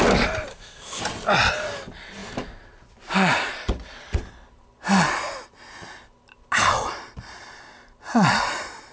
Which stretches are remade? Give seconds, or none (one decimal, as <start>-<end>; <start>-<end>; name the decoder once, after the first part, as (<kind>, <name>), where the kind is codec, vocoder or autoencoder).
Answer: 0.5-1.0 (codec, ZipCodec)

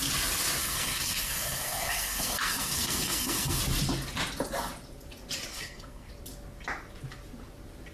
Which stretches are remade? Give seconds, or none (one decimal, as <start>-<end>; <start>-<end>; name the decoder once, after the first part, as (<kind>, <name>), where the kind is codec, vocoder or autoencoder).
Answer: 0.6-3.6 (codec, SNAC); 5.5-6.1

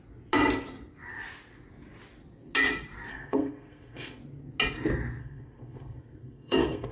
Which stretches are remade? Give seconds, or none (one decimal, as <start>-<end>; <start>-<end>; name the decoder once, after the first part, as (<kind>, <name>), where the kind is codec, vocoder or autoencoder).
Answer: 3.1-4.2 (codec, SNAC); 5.2-6.9

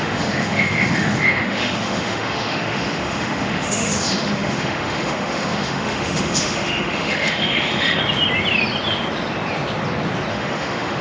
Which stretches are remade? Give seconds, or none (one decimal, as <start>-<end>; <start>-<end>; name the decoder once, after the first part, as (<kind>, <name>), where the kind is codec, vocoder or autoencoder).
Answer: 0.0-8.0 (autoencoder, DAC-VAE); 10.3-11.0